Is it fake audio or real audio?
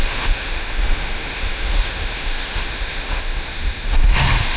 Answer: fake